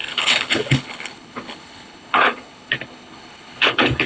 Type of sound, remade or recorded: remade